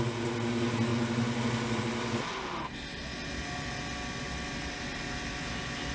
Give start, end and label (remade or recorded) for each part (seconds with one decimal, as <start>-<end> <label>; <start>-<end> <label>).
0.0-5.9 recorded